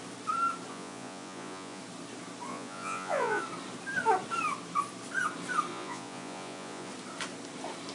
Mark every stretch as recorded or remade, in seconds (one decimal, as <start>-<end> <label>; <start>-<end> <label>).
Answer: 0.0-0.7 recorded; 0.7-1.8 remade; 1.8-2.5 recorded; 2.5-3.4 remade; 3.4-5.7 recorded; 5.7-6.9 remade; 6.9-7.9 recorded